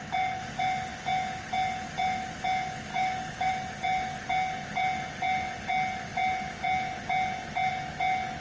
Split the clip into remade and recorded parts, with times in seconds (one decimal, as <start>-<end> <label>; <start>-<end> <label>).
0.0-2.9 recorded; 2.9-3.5 remade; 3.5-8.4 recorded